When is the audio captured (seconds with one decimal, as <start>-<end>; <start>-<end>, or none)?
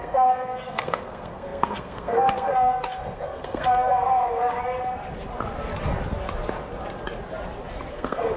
4.6-7.9